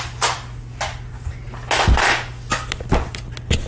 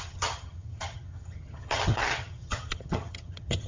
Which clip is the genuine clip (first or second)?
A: first